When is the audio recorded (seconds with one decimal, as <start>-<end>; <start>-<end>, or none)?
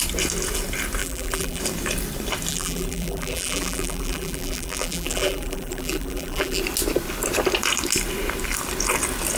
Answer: 0.0-1.0; 1.6-2.5; 6.6-9.4